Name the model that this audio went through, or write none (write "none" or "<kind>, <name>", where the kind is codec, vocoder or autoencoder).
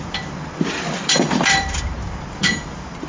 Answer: vocoder, BigVGAN v2